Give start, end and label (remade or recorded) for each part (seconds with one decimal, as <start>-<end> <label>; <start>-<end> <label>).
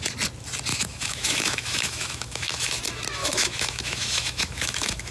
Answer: 0.0-0.7 recorded; 0.7-2.8 remade; 2.8-3.2 recorded; 3.2-5.1 remade